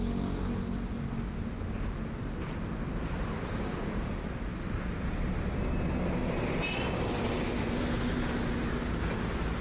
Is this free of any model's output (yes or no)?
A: yes